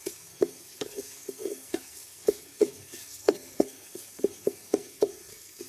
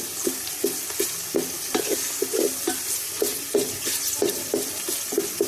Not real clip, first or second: first